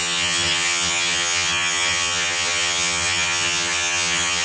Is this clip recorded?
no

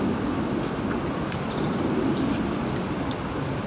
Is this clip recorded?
yes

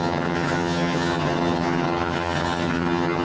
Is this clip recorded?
no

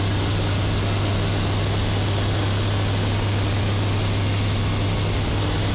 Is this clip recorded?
yes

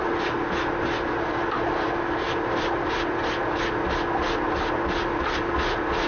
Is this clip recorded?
yes